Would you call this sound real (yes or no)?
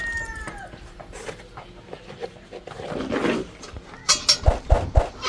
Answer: yes